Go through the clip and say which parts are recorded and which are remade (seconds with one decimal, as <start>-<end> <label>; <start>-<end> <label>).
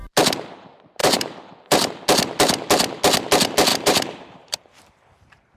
0.0-1.0 recorded; 1.0-1.9 remade; 1.9-3.7 recorded; 3.7-5.6 remade